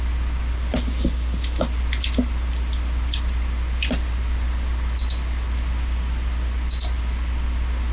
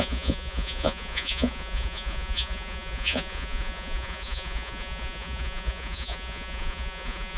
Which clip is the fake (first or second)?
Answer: second